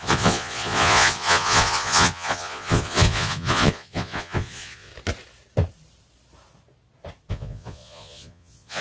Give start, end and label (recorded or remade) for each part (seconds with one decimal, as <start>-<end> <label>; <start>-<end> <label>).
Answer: 0.0-4.9 remade; 4.9-7.3 recorded; 7.3-8.8 remade